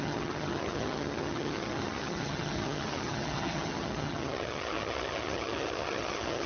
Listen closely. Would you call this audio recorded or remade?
remade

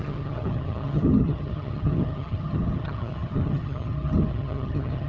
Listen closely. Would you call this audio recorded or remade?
remade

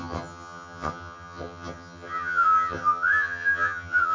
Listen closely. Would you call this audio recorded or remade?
remade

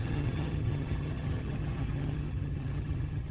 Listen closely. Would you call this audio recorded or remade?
remade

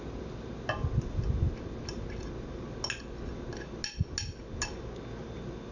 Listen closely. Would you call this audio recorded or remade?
recorded